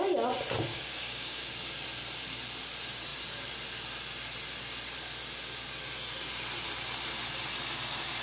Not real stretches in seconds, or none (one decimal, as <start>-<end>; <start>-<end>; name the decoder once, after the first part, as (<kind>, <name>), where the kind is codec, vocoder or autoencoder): 0.7-1.5 (codec, DAC)